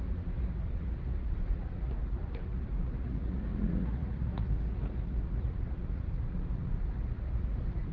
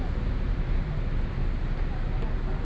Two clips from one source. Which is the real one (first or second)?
second